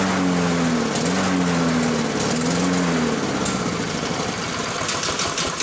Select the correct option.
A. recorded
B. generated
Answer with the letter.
A